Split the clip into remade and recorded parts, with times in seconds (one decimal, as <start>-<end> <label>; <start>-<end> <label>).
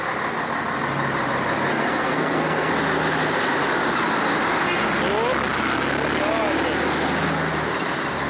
0.0-1.7 recorded; 1.7-2.7 remade; 2.7-8.3 recorded